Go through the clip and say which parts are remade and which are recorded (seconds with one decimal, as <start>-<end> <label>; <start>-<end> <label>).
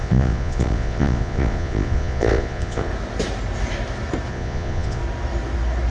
0.0-2.9 remade; 2.9-4.3 recorded; 4.3-5.0 remade; 5.0-5.9 recorded